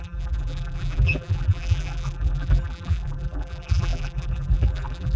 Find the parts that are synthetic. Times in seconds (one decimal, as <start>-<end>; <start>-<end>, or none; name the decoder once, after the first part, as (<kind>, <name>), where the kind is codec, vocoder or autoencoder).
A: 0.0-5.2 (vocoder, BigVGAN v2)